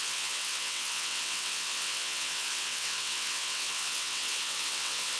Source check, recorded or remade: remade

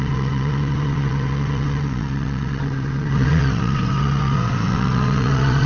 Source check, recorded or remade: remade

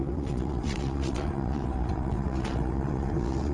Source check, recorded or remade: remade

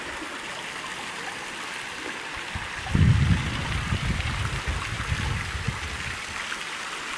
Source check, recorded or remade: recorded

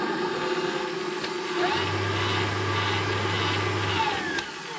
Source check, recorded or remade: recorded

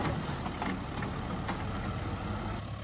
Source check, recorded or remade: recorded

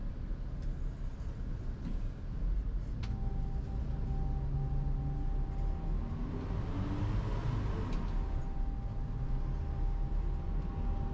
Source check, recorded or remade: recorded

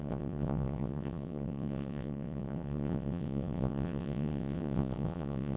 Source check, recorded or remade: remade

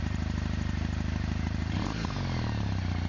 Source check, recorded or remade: recorded